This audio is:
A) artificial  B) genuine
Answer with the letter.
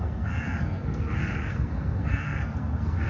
A